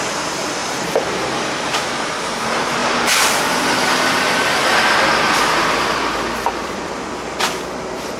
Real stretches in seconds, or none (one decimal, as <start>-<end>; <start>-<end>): 0.0-0.6; 2.4-2.8; 3.4-8.2